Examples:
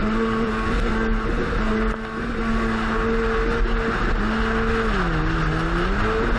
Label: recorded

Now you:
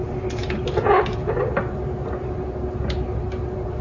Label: recorded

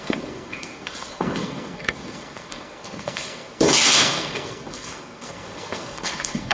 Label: remade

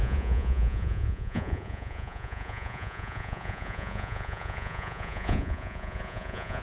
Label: remade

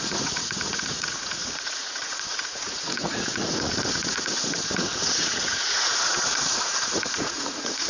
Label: remade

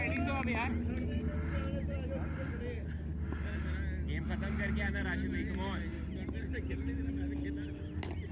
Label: recorded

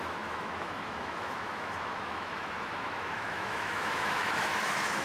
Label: remade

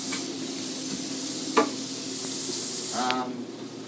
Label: recorded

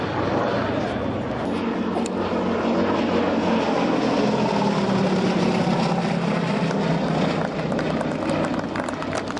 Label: recorded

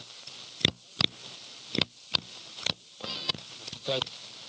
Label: recorded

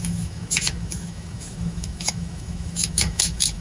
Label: remade